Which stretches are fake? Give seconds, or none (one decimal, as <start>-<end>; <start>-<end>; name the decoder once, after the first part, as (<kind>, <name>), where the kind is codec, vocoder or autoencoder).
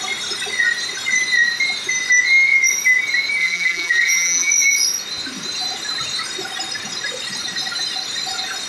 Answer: 3.4-4.5 (vocoder, BigVGAN v2)